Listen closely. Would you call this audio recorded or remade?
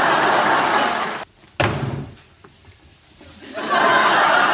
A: recorded